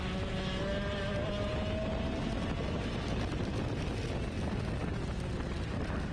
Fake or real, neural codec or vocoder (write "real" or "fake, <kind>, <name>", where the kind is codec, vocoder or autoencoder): real